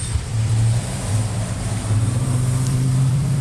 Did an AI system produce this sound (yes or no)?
yes